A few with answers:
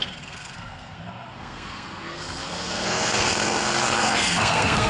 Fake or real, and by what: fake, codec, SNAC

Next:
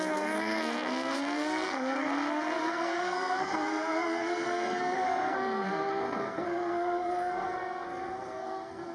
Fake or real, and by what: fake, codec, SNAC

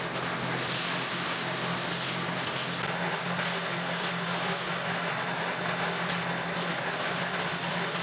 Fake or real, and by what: real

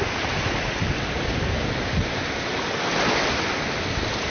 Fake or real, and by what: real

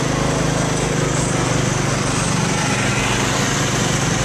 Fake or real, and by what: real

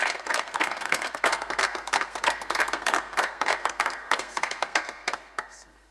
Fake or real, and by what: fake, codec, SNAC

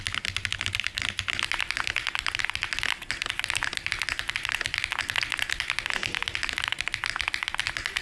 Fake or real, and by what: real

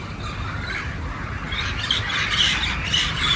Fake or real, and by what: real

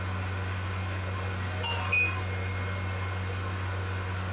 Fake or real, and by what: real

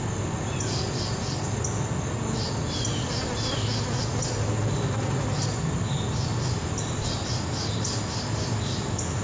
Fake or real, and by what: real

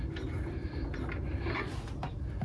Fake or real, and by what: real